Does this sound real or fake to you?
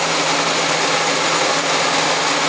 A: real